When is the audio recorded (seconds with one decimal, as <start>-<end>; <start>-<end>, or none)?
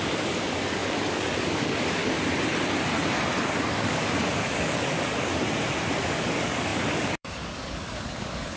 2.0-3.4; 5.4-6.0